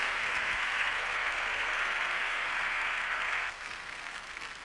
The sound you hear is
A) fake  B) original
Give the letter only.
A